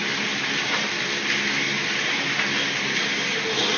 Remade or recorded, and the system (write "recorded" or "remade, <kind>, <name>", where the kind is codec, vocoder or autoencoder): recorded